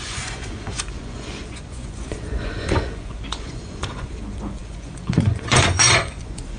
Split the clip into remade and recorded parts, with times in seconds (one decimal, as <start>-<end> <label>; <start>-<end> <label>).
0.0-6.6 remade